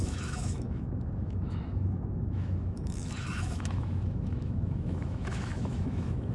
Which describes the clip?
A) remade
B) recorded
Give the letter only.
A